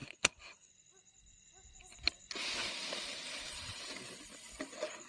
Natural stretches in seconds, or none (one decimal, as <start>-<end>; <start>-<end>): 0.7-5.1